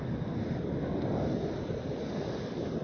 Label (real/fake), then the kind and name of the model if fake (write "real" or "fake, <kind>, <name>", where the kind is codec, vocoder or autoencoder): real